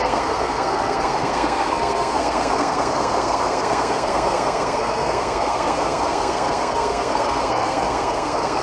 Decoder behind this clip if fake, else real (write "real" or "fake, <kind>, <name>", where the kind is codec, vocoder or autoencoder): fake, codec, SNAC